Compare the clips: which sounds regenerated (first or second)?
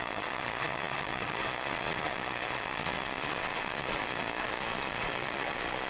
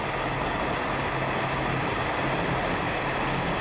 first